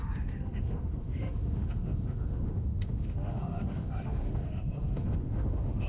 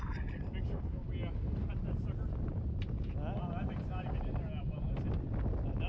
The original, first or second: second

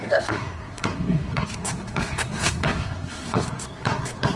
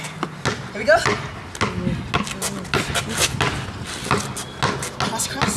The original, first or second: second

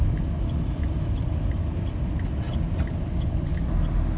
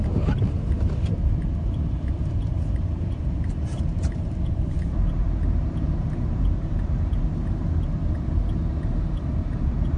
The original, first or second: first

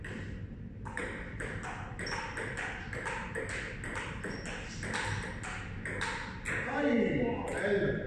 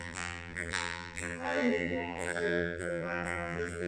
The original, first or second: first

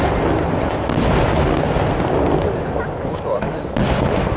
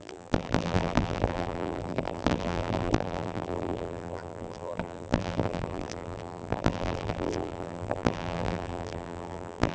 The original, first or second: first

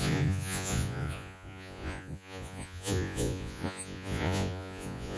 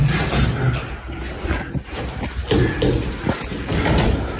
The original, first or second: second